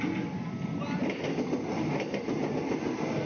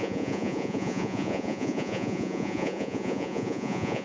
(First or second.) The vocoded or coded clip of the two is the second